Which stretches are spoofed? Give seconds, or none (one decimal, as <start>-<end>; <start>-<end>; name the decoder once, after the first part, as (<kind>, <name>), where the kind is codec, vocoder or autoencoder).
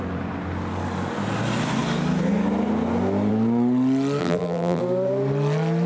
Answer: 4.2-4.8 (vocoder, BigVGAN v2)